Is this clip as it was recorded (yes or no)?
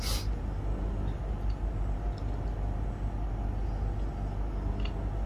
yes